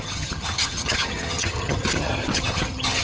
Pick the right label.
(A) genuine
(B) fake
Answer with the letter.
B